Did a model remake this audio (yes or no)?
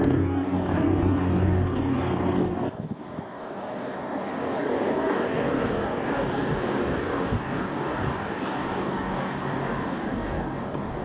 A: yes